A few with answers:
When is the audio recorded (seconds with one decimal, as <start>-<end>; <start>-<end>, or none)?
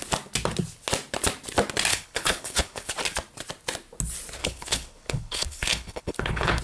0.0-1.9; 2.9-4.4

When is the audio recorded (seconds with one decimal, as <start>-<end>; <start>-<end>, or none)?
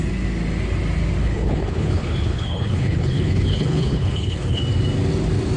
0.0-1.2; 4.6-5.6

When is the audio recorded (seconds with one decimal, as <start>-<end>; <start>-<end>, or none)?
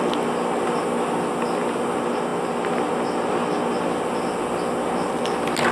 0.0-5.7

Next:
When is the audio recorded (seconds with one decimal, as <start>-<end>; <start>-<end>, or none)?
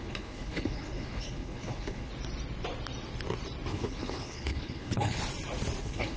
2.1-3.7; 5.2-5.8